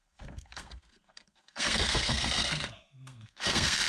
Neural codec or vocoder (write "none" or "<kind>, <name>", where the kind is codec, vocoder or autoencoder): codec, SNAC